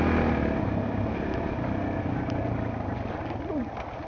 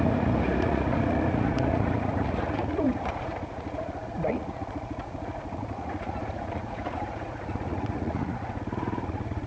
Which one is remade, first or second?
second